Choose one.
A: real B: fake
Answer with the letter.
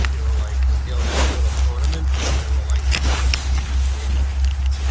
A